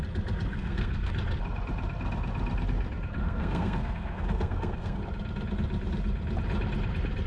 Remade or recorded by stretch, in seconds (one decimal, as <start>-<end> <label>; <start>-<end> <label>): 0.0-0.5 recorded; 0.5-1.1 remade; 1.1-3.2 recorded; 3.2-5.0 remade; 5.0-7.3 recorded